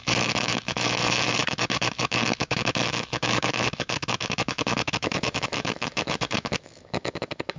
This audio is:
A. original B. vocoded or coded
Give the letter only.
B